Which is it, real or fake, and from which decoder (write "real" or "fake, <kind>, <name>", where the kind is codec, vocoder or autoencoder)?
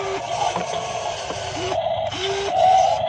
fake, vocoder, BigVGAN v2